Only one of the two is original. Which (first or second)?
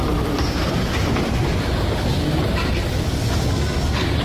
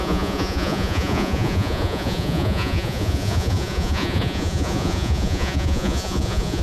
first